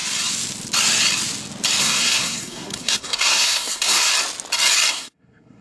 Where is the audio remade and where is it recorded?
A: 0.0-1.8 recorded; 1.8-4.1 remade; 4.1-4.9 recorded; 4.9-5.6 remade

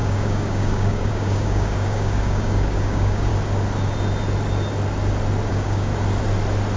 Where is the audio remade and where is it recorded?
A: 0.0-3.3 remade; 3.3-5.5 recorded; 5.5-5.9 remade; 5.9-6.8 recorded

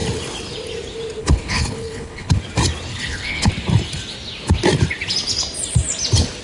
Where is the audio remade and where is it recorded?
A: 0.0-1.2 recorded; 1.2-2.4 remade; 2.4-2.9 recorded; 2.9-3.5 remade; 3.5-6.4 recorded

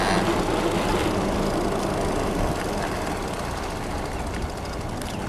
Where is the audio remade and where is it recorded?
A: 0.0-5.3 recorded

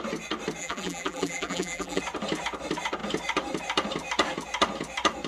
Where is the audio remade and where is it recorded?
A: 0.0-0.6 recorded; 0.6-2.0 remade; 2.0-5.3 recorded